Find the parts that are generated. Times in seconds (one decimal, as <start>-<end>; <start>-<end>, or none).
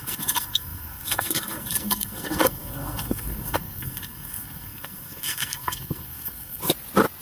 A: 0.0-6.6